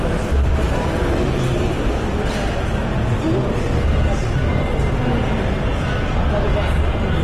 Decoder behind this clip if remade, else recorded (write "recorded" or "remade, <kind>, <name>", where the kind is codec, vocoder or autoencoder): recorded